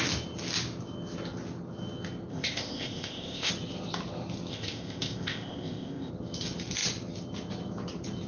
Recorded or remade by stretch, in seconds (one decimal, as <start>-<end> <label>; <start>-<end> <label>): 0.0-2.3 recorded; 2.3-3.5 remade; 3.5-4.5 recorded; 4.5-6.1 remade; 6.1-8.3 recorded